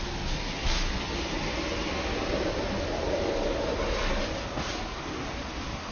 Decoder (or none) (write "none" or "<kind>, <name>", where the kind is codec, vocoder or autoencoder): none